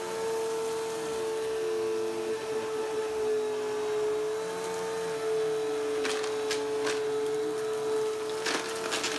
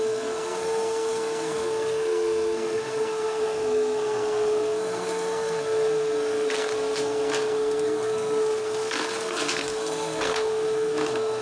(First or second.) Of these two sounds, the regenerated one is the second